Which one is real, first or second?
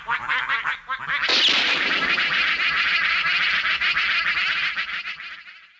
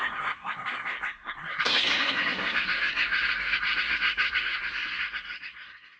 first